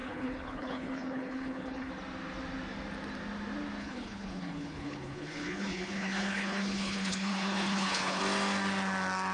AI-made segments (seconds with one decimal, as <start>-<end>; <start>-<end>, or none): 0.0-1.9; 3.8-8.2